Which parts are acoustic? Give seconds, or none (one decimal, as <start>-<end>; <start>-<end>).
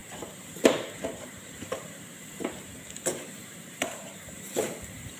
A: 2.6-3.4